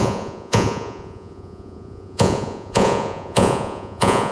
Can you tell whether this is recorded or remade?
remade